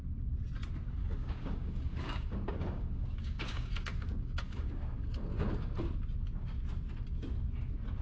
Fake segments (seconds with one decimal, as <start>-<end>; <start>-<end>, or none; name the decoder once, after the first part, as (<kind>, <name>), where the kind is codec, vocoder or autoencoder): 1.0-5.8 (codec, DAC)

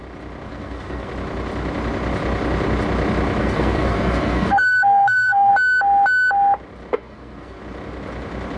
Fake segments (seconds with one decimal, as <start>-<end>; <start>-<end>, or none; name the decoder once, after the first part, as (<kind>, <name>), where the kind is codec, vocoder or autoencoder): 0.5-1.1 (codec, SNAC); 3.4-5.5; 6.9-7.6

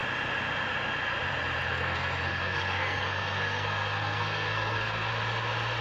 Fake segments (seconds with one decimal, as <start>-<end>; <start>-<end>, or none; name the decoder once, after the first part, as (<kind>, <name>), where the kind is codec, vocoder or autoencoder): 1.7-5.1 (codec, SNAC)

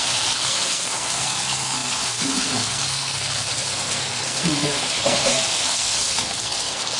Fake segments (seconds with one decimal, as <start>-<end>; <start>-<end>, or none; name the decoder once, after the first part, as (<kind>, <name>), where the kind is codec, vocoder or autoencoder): 0.0-7.0 (codec, SNAC)

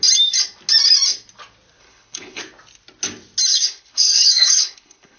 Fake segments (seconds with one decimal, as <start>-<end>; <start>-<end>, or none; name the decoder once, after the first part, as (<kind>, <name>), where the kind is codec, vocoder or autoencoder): 1.8-2.4 (codec, HILCodec); 3.5-5.2

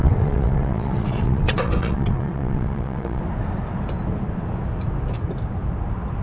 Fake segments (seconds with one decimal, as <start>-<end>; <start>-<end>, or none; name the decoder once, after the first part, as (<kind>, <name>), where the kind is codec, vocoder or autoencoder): 0.0-3.2 (vocoder, WaveNeXt)